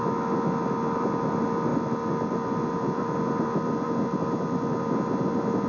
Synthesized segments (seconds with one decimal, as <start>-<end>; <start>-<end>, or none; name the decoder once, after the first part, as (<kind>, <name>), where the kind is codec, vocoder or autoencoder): none